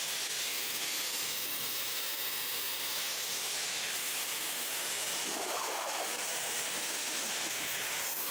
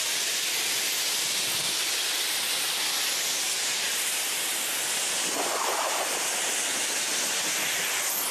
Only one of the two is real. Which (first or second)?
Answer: second